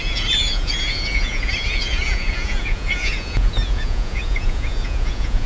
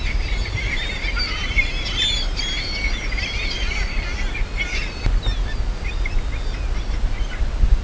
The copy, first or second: first